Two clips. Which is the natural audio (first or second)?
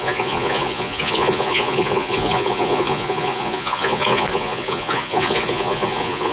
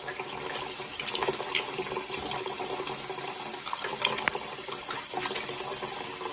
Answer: second